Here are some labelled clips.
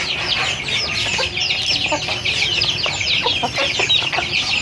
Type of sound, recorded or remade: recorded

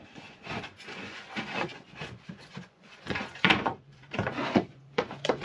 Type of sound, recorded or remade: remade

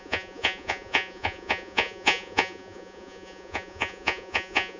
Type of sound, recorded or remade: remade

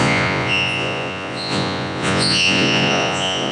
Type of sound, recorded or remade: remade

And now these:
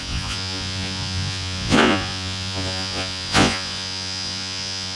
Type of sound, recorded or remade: remade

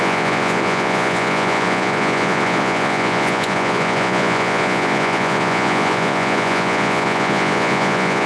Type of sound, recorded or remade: remade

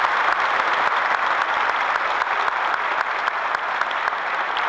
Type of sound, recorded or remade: recorded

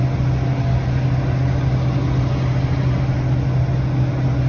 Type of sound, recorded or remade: recorded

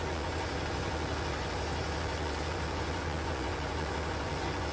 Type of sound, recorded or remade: remade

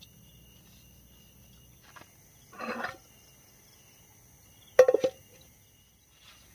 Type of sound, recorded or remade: recorded